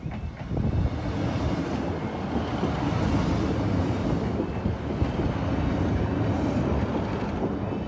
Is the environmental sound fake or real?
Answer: real